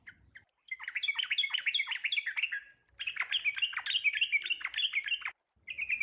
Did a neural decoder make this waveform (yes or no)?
no